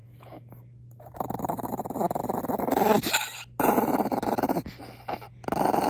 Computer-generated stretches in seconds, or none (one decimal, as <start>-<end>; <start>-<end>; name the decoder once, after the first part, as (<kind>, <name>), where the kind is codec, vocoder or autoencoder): 0.0-1.8 (codec, DAC)